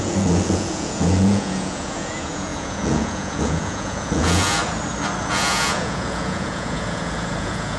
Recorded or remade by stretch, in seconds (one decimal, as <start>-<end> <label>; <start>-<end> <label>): 0.0-4.6 remade; 4.6-5.2 recorded; 5.2-7.8 remade